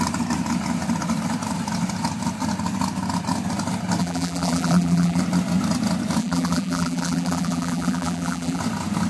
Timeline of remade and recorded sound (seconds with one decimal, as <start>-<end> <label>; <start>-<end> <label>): 0.0-4.0 recorded; 4.0-5.2 remade; 5.2-6.2 recorded; 6.2-8.6 remade; 8.6-9.1 recorded